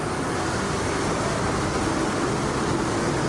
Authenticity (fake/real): real